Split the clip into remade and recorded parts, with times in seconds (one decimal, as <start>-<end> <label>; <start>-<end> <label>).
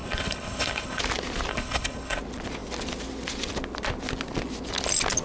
0.0-1.0 remade; 1.0-1.5 recorded; 1.5-2.2 remade; 2.2-5.2 recorded